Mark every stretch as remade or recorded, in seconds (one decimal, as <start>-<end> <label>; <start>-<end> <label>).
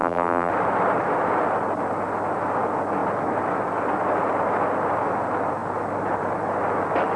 0.0-0.5 remade; 0.5-7.2 recorded